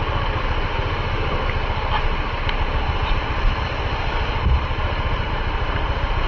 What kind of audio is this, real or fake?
real